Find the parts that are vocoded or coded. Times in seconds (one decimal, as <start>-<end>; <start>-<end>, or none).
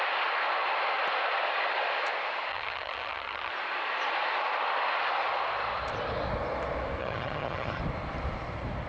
2.5-3.5; 7.0-7.8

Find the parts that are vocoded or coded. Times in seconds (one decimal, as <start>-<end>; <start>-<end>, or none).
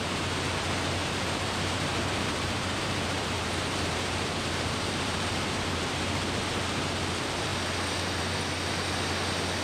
1.0-6.0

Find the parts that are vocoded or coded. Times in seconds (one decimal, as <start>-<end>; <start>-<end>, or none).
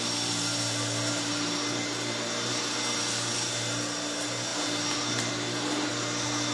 none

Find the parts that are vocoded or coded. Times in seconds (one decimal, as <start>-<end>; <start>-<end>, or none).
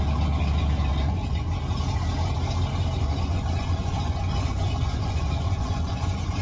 0.9-1.5; 3.0-6.4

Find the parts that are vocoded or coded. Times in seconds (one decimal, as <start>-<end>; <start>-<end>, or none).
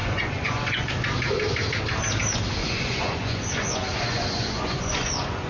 0.0-0.9; 2.6-5.5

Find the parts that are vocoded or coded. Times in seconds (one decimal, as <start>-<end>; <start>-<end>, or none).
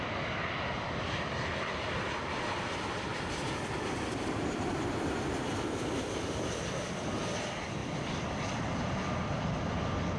7.8-9.4